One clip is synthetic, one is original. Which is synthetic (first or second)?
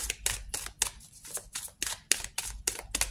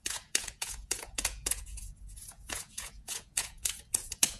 second